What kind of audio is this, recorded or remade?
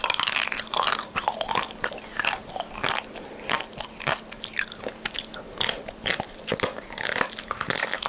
recorded